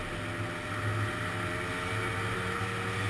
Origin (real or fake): real